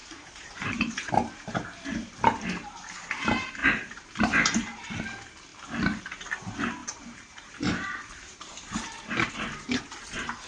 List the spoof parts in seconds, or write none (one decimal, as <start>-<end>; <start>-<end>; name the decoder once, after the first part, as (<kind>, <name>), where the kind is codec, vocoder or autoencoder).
0.0-1.1 (vocoder, BigVGAN v2); 3.6-5.0; 6.8-9.3